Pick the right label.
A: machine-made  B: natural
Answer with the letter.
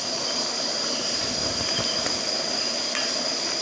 A